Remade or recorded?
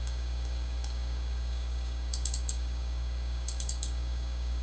remade